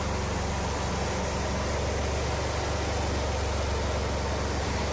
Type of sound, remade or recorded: recorded